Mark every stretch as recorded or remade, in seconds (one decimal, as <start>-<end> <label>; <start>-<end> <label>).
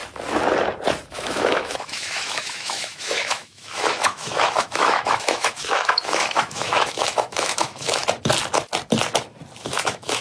0.0-1.1 recorded; 1.1-8.0 remade; 8.0-9.6 recorded; 9.6-10.2 remade